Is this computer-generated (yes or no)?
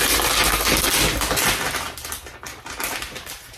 no